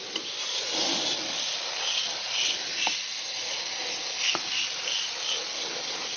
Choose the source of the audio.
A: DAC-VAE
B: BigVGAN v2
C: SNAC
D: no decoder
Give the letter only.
D